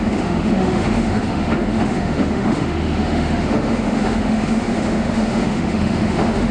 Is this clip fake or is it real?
fake